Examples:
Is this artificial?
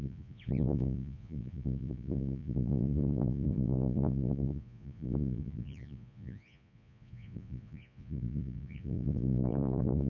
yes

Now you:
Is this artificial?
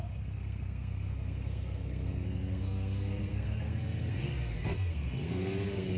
yes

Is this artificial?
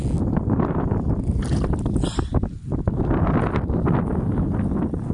no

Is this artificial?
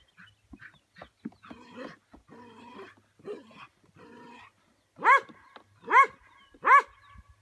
no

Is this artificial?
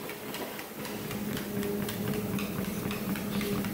no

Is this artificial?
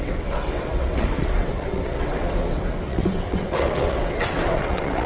yes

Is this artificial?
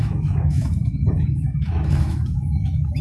yes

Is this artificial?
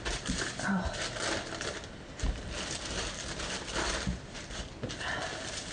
no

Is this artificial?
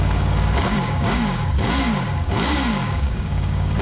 yes